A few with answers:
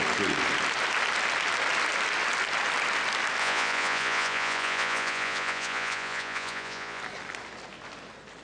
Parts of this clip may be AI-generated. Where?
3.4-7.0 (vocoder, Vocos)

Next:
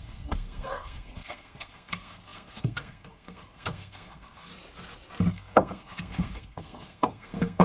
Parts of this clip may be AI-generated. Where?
0.0-4.5 (codec, SNAC); 5.3-7.6

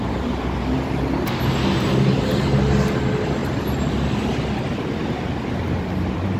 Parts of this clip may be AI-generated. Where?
none

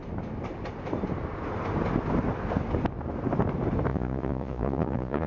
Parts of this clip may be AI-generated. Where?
3.9-5.3 (vocoder, Vocos)

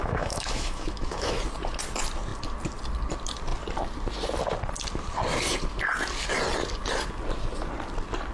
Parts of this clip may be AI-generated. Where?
0.0-1.4 (autoencoder, DAC-VAE)

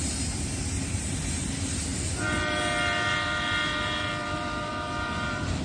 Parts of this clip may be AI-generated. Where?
0.0-5.6 (vocoder, BigVGAN v2)

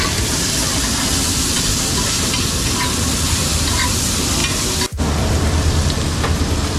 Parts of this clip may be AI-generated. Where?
4.4-5.0 (vocoder, BigVGAN v2)

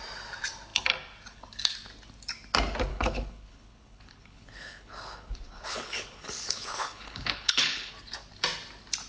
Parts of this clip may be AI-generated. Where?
2.9-7.9 (codec, HILCodec)